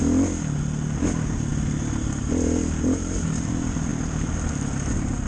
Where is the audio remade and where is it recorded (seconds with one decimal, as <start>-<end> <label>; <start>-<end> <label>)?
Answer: 0.0-5.3 recorded